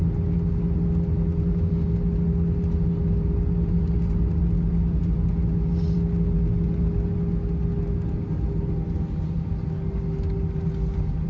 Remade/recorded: recorded